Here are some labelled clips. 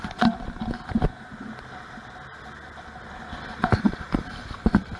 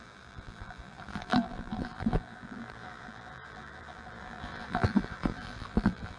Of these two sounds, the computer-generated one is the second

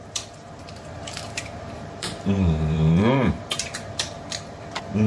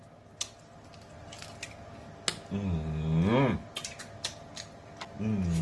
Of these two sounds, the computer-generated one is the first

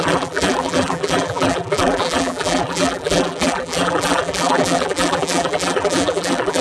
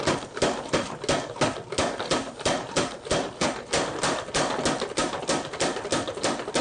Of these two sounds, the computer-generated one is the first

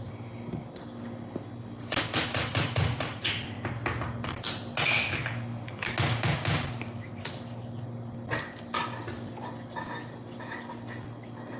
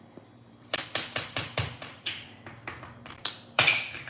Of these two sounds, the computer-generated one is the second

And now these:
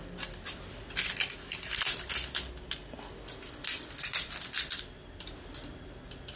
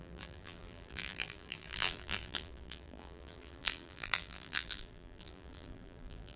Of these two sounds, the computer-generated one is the second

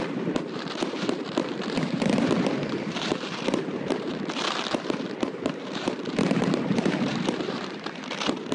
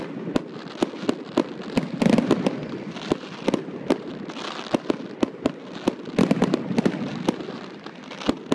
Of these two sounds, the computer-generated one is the first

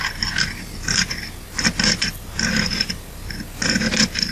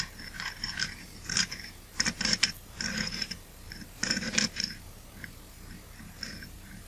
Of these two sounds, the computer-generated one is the second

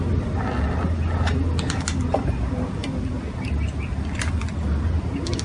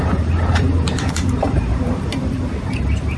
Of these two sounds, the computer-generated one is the second